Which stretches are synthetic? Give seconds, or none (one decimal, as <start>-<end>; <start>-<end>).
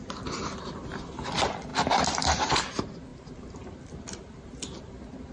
1.7-2.6